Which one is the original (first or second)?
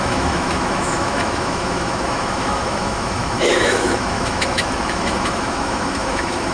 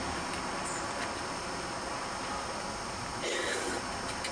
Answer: second